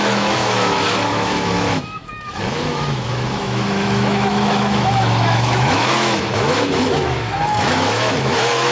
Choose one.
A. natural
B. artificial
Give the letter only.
B